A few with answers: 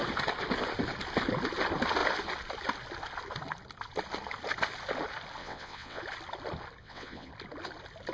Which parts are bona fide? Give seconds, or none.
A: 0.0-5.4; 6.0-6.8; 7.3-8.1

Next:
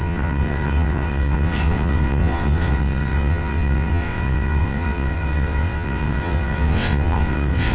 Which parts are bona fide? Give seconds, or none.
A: none

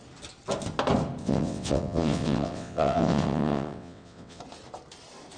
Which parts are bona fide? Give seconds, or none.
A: 0.0-1.2; 4.4-5.4

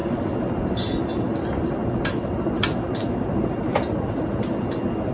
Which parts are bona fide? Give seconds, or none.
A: 0.0-5.1

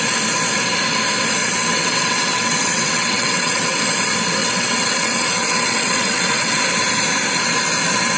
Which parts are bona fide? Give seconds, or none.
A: 0.0-1.4; 3.8-4.4; 6.6-8.2

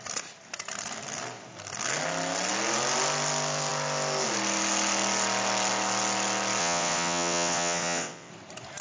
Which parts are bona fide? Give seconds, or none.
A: 0.0-6.6; 8.3-8.8

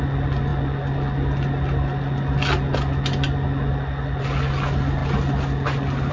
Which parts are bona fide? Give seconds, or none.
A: 0.0-6.1

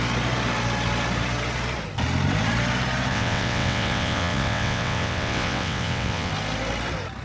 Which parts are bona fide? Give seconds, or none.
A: 0.0-3.1; 6.3-7.2